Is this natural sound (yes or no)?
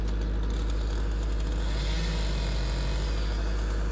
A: yes